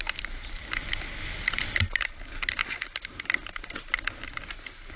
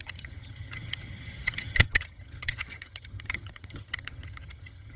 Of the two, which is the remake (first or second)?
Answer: second